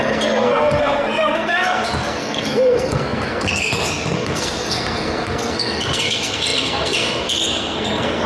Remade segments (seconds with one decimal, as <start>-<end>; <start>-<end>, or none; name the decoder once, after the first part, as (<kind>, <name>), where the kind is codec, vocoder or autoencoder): 0.0-8.3 (codec, SNAC)

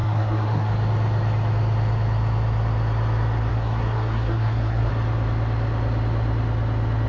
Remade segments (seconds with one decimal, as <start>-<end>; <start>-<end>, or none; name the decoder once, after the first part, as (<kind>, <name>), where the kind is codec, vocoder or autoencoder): 0.0-0.7 (codec, SNAC); 3.5-4.9

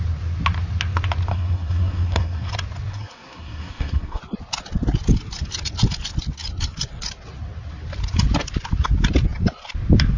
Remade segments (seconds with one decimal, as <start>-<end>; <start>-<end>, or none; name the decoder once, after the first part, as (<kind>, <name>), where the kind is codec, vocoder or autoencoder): 1.3-2.5 (codec, SNAC); 2.9-4.2

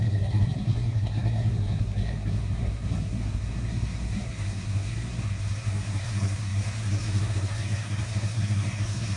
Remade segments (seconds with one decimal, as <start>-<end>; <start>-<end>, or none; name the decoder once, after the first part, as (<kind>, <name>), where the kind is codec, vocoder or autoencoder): 0.0-9.2 (codec, SNAC)

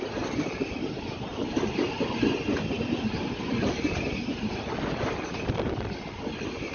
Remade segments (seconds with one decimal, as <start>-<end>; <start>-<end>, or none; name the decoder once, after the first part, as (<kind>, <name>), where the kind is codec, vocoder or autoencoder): none

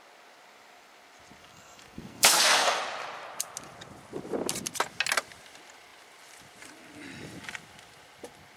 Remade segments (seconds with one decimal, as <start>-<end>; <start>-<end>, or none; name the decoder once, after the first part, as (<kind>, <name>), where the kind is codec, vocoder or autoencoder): 1.4-2.8 (codec, SNAC)